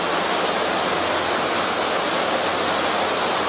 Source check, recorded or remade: recorded